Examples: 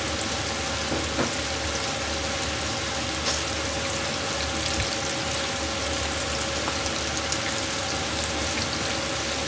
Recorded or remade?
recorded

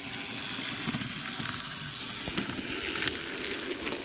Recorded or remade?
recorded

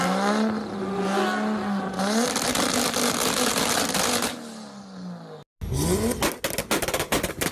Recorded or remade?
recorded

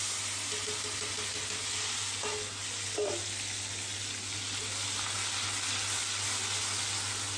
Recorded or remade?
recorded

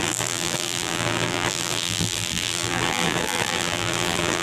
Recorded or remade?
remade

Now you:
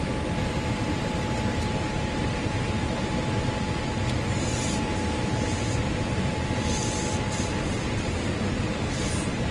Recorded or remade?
recorded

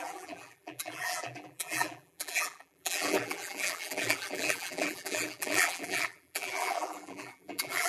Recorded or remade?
remade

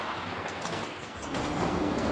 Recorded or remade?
remade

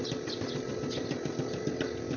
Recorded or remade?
recorded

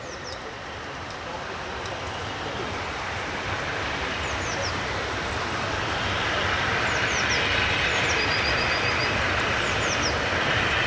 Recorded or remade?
recorded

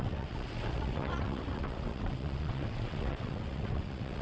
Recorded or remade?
remade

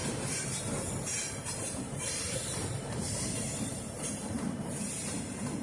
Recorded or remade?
remade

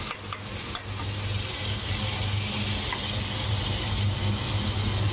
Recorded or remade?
recorded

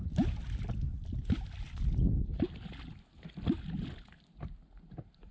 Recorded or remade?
recorded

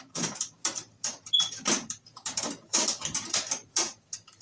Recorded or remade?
remade